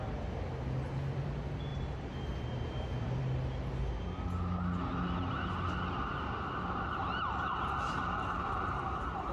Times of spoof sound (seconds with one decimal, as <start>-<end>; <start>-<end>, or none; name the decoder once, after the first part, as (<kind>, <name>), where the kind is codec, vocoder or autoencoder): 1.7-3.2 (vocoder, BigVGAN v2)